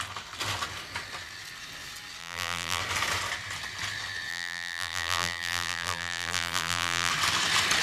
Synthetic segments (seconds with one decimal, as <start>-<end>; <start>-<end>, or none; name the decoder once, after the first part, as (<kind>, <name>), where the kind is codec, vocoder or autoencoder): 2.2-2.8 (vocoder, BigVGAN v2); 4.3-7.1